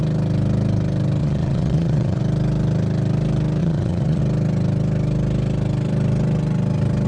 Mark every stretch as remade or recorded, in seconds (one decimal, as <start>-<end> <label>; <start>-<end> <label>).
0.0-1.2 recorded; 1.2-2.2 remade; 2.2-3.6 recorded; 3.6-4.2 remade; 4.2-7.1 recorded